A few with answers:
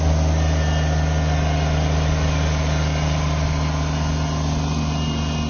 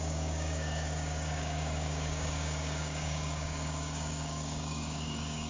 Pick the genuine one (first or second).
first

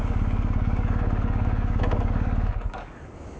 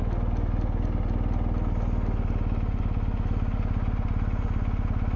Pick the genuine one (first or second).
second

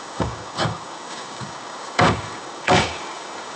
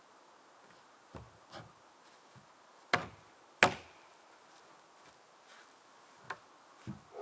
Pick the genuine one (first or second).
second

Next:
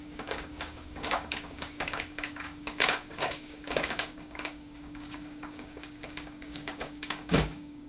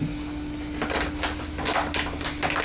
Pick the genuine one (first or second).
second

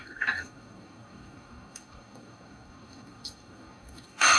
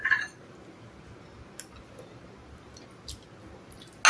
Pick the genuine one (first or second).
second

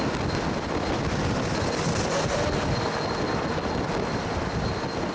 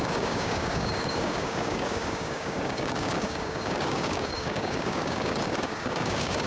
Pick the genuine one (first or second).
first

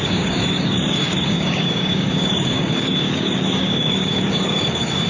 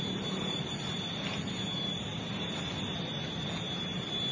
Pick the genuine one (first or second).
second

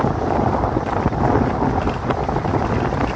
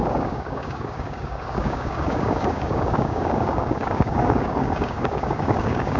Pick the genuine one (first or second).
first